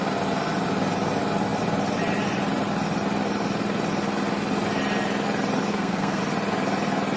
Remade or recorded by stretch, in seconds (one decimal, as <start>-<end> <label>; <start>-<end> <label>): 0.0-5.7 recorded; 5.7-6.2 remade; 6.2-7.2 recorded